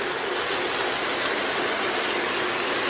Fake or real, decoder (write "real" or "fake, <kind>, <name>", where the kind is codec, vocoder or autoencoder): real